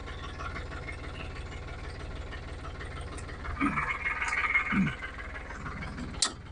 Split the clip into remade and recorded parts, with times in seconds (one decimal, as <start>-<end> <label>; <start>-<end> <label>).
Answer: 0.0-6.5 recorded

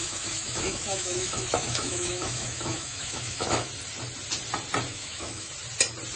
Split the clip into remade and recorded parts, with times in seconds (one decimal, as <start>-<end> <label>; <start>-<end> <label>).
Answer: 0.0-3.7 remade; 3.7-4.9 recorded; 4.9-5.5 remade; 5.5-6.2 recorded

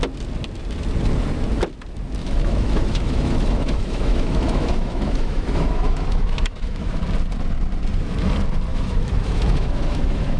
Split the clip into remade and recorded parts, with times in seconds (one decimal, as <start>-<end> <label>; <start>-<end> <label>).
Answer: 0.0-2.2 recorded; 2.2-7.0 remade; 7.0-8.7 recorded; 8.7-10.4 remade

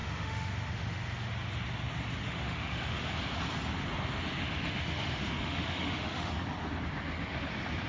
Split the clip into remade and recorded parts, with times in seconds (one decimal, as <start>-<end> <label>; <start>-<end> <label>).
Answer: 0.0-1.3 remade; 1.3-2.2 recorded; 2.2-3.1 remade; 3.1-4.4 recorded; 4.4-6.3 remade; 6.3-7.9 recorded

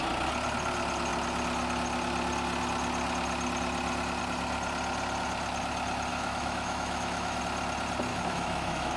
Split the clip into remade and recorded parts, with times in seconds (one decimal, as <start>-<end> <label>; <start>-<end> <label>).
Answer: 0.0-6.1 recorded; 6.1-7.4 remade; 7.4-8.1 recorded; 8.1-9.0 remade